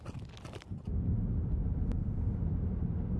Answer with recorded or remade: recorded